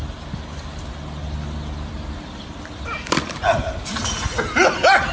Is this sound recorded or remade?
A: recorded